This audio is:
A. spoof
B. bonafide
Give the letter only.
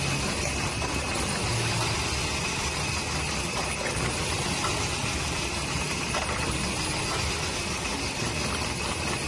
B